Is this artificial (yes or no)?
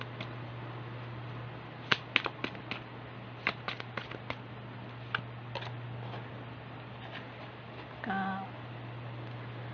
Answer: no